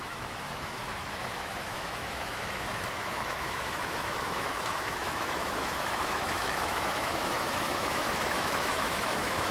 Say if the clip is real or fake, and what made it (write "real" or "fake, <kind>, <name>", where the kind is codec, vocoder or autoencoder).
fake, autoencoder, DAC-VAE